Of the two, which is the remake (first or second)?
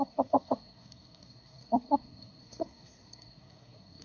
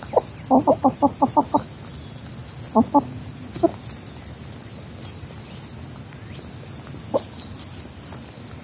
first